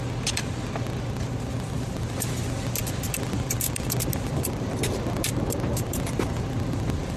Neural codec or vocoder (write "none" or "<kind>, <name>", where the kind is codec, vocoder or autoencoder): none